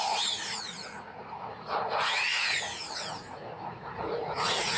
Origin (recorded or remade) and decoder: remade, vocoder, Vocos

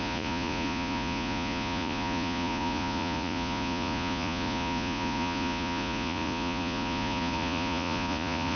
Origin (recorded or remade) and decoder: remade, vocoder, Vocos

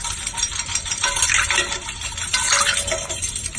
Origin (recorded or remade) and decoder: recorded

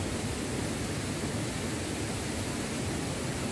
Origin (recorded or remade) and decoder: recorded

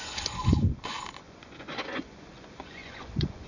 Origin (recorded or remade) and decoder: remade, vocoder, Vocos